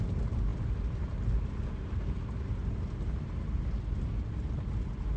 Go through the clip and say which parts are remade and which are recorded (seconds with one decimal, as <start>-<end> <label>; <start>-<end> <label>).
0.0-5.2 recorded